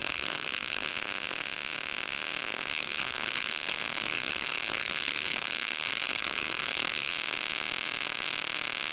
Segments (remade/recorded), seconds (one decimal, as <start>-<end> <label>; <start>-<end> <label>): 0.0-0.9 remade; 0.9-2.7 recorded; 2.7-7.1 remade; 7.1-8.9 recorded